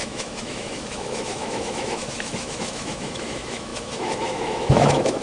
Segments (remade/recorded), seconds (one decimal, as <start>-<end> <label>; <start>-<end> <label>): 0.0-5.2 remade